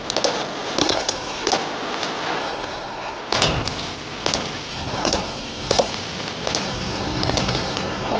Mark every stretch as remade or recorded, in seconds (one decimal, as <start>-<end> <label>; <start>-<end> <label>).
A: 0.0-0.8 recorded; 0.8-1.5 remade; 1.5-2.4 recorded; 2.4-3.2 remade; 3.2-4.7 recorded; 4.7-5.9 remade; 5.9-6.6 recorded; 6.6-8.2 remade